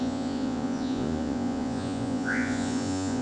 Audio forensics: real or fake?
fake